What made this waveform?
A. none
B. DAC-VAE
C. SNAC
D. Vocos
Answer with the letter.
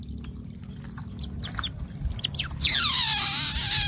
A